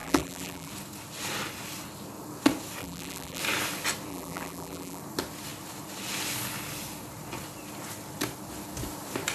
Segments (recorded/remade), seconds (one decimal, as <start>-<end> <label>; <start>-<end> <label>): 0.0-0.7 remade; 0.7-2.8 recorded; 2.8-3.4 remade; 3.4-4.1 recorded; 4.1-5.0 remade; 5.0-9.3 recorded